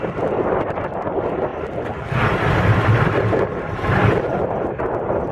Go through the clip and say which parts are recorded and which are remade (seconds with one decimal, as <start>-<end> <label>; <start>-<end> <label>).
0.0-5.3 remade